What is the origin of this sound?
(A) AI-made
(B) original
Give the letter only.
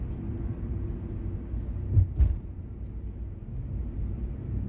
B